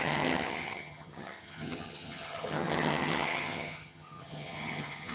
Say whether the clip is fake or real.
fake